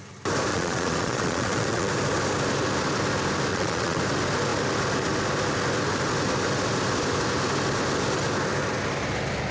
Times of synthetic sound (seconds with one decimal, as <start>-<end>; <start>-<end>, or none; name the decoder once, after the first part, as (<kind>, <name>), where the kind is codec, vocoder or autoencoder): 0.5-1.9 (vocoder, Vocos); 3.5-4.0

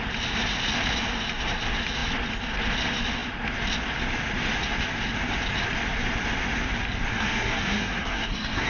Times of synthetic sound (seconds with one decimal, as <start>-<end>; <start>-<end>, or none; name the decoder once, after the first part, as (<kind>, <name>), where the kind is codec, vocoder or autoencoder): 7.1-8.7 (codec, SNAC)

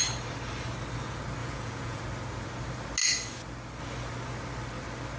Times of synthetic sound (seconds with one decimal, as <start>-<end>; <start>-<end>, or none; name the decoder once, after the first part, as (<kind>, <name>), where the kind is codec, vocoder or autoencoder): 1.4-2.0 (vocoder, Vocos)

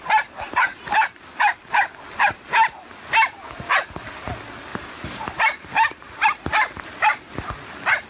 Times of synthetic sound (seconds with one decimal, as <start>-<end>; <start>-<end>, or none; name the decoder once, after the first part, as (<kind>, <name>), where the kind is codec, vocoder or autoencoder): 0.7-1.2 (vocoder, BigVGAN v2); 4.7-6.9

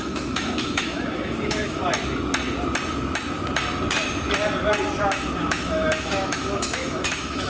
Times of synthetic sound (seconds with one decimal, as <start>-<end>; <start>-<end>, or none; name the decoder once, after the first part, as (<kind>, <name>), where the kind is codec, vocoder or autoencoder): 0.0-1.8 (autoencoder, DAC-VAE); 5.4-7.5

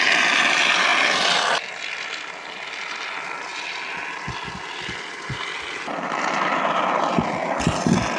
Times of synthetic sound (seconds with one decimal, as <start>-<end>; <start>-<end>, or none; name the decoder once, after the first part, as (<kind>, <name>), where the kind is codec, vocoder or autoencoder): 3.5-7.7 (vocoder, BigVGAN v2)